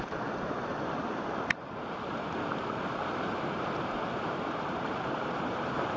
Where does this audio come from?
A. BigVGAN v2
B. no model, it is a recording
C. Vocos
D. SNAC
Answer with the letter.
A